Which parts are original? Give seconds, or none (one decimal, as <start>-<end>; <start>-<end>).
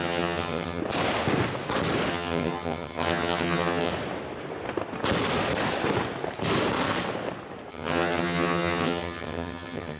0.8-2.1; 3.9-7.7